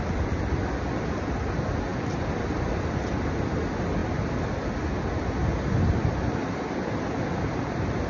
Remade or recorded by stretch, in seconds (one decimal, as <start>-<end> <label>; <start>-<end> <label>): 0.0-8.1 recorded